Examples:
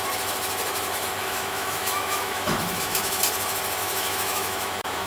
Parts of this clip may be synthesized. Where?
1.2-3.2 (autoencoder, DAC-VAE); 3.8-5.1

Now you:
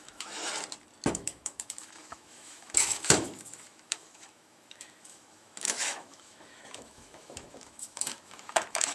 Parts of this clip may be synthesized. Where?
0.0-0.4 (autoencoder, DAC-VAE); 1.1-8.9

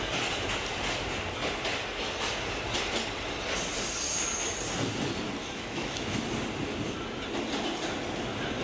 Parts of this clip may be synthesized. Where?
5.4-6.2 (autoencoder, DAC-VAE)

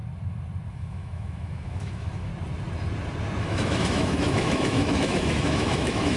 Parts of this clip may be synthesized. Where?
0.7-2.3 (autoencoder, DAC-VAE); 3.4-6.2